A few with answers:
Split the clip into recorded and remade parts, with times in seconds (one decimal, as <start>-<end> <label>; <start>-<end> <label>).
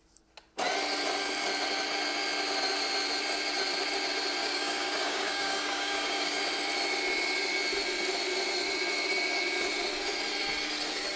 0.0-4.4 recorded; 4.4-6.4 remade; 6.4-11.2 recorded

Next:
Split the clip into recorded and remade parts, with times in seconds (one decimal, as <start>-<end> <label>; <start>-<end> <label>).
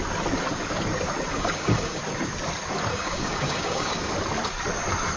0.0-1.3 recorded; 1.3-2.0 remade; 2.0-2.9 recorded; 2.9-4.1 remade; 4.1-5.2 recorded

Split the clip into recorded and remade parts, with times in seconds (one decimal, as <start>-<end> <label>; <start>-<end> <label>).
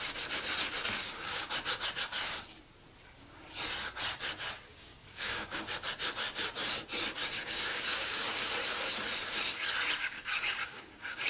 0.0-1.0 recorded; 1.0-1.5 remade; 1.5-4.7 recorded; 4.7-5.6 remade; 5.6-7.2 recorded; 7.2-8.5 remade; 8.5-10.0 recorded; 10.0-11.3 remade